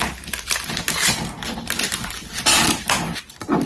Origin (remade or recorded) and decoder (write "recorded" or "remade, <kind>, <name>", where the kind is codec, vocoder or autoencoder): recorded